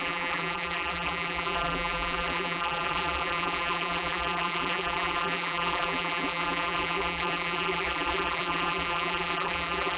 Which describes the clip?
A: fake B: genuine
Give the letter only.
A